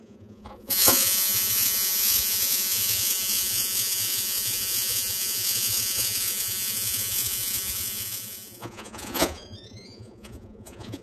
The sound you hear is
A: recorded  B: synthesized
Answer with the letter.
B